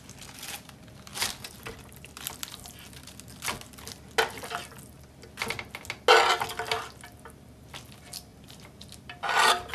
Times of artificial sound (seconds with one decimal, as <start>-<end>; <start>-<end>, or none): 8.3-8.8